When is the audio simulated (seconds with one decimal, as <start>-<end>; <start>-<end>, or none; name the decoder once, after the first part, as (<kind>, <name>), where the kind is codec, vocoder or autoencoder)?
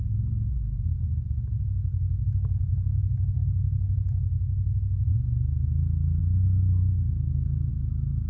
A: 6.2-7.7 (autoencoder, DAC-VAE)